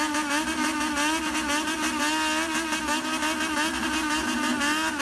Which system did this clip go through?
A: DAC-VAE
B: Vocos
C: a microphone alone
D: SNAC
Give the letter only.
C